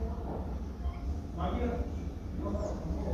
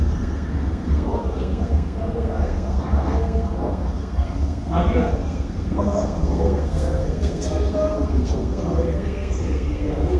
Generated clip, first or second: second